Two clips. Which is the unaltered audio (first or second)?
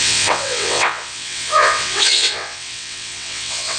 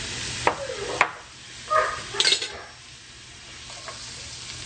second